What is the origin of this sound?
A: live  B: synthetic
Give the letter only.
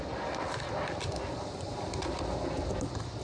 A